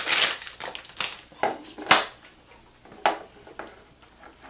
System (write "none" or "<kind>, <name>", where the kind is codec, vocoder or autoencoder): none